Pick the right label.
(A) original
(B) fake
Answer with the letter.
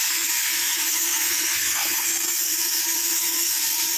B